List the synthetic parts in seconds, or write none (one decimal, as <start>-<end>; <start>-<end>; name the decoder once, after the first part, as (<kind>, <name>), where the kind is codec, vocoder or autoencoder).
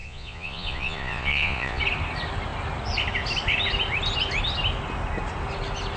0.0-1.8 (vocoder, Vocos)